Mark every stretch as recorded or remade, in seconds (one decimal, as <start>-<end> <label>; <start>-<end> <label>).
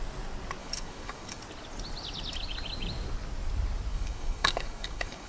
0.0-0.6 recorded; 0.6-1.4 remade; 1.4-3.9 recorded; 3.9-5.3 remade